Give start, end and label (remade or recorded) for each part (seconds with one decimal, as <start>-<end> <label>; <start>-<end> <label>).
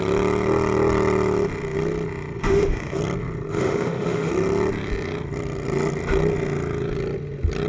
0.0-2.4 recorded; 2.4-3.0 remade; 3.0-3.5 recorded; 3.5-4.3 remade; 4.3-7.7 recorded